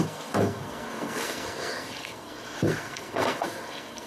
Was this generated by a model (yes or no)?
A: yes